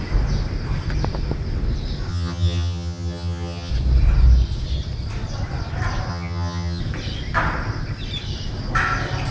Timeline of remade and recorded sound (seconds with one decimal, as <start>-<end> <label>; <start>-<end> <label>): 0.0-2.1 recorded; 2.1-3.7 remade; 3.7-6.1 recorded; 6.1-6.8 remade; 6.8-9.3 recorded